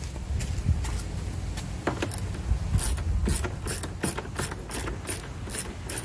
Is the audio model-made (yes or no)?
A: no